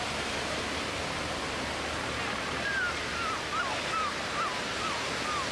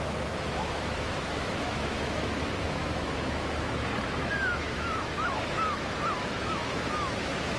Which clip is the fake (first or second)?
second